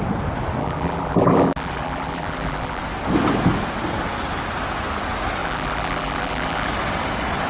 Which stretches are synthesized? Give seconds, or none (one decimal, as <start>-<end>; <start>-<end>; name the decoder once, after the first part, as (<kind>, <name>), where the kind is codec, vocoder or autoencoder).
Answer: 0.6-2.8 (vocoder, BigVGAN v2); 5.4-6.7